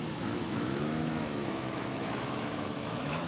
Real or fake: fake